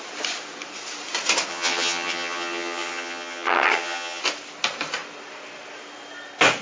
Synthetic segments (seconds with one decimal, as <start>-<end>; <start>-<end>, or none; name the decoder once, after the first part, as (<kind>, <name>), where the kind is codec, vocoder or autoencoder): 1.5-4.2 (vocoder, HiFi-GAN)